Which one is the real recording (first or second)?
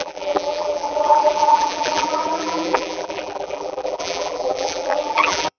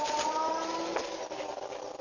second